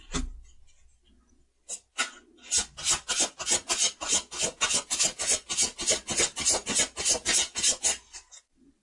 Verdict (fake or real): real